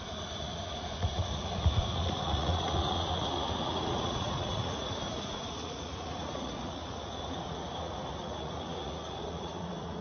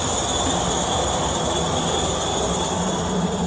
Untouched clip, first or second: second